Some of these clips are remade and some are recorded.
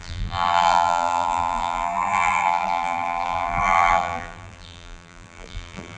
remade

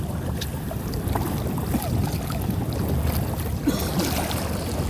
recorded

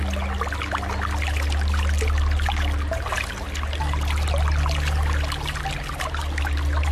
recorded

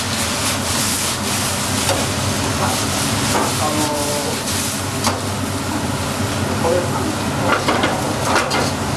recorded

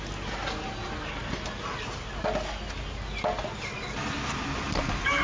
recorded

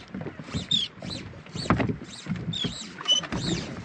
recorded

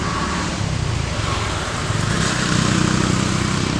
remade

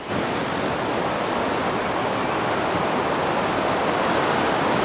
recorded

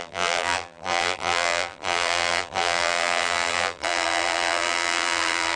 remade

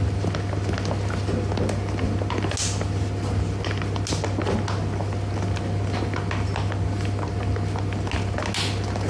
recorded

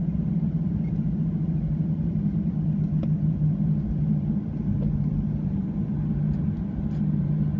remade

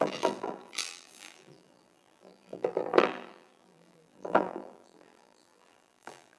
remade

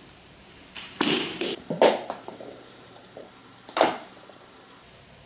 remade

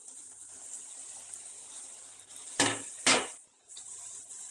recorded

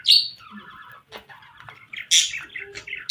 recorded